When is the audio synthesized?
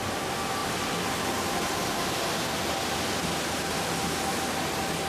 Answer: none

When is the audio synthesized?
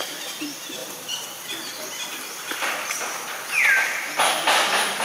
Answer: 0.0-5.0 (vocoder, BigVGAN v2)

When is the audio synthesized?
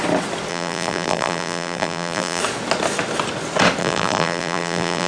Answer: 0.5-2.4 (vocoder, BigVGAN v2); 3.8-5.1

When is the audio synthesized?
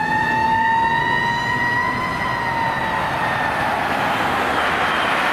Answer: none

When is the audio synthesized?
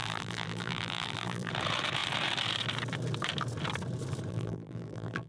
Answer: 0.0-1.5 (vocoder, BigVGAN v2); 4.3-5.3